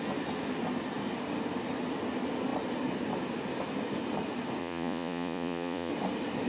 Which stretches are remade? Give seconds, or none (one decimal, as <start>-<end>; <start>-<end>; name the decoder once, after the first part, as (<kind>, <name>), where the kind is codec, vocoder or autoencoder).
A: 4.6-5.9 (vocoder, Vocos)